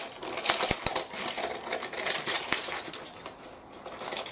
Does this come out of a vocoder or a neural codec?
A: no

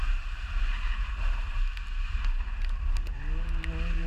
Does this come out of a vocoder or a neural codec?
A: no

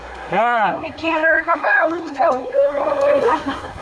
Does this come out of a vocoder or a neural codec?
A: yes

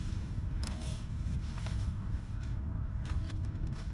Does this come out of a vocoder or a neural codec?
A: yes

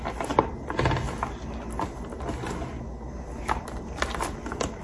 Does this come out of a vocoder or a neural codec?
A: no